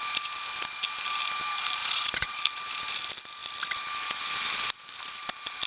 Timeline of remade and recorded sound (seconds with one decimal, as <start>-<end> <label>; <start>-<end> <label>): 0.0-1.8 recorded; 1.8-2.4 remade; 2.4-5.7 recorded